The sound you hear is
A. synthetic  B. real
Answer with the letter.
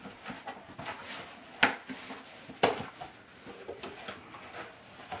B